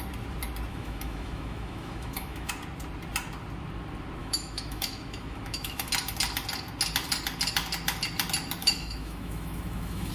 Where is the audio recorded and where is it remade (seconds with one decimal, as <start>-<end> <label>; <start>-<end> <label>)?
0.0-0.7 recorded; 0.7-2.5 remade; 2.5-4.2 recorded; 4.2-5.9 remade; 5.9-8.6 recorded; 8.6-10.1 remade